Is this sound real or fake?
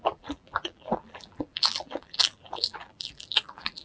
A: fake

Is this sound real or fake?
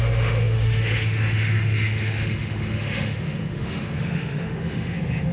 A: fake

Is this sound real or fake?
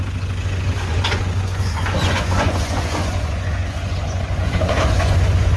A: fake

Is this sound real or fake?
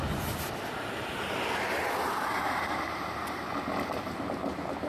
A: real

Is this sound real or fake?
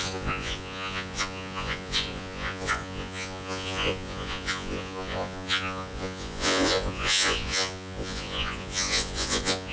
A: fake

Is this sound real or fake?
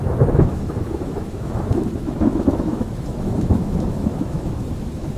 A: fake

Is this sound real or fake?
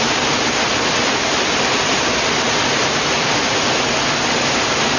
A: real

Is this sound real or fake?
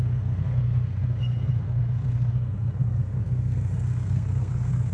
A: fake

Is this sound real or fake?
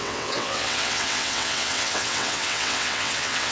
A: fake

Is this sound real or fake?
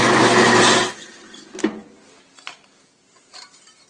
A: real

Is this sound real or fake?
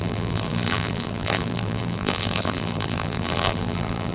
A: fake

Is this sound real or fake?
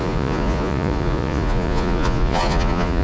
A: fake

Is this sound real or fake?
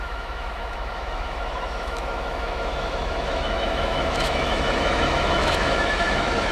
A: fake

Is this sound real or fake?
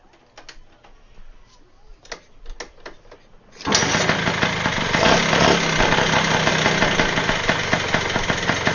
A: real